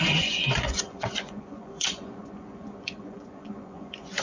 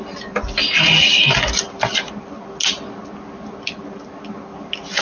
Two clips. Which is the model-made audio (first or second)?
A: first